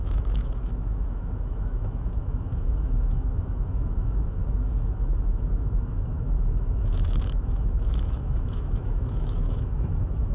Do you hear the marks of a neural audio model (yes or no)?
yes